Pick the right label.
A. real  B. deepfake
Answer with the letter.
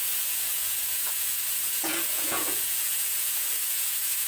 B